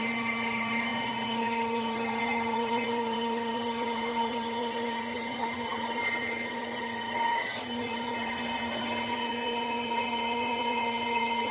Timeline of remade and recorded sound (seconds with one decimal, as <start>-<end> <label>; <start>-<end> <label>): 0.0-11.5 remade